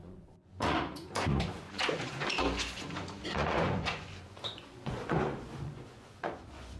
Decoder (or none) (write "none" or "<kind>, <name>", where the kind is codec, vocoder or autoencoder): vocoder, Vocos